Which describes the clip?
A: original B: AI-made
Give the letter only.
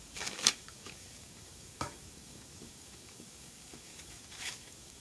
B